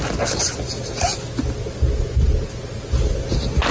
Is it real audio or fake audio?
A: real